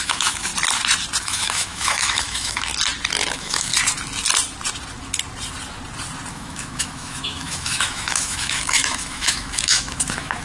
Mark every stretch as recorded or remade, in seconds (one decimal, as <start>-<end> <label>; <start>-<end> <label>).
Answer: 0.0-0.5 remade; 0.5-1.2 recorded; 1.2-2.7 remade; 2.7-3.3 recorded; 3.3-3.7 remade; 3.7-6.3 recorded; 6.3-10.4 remade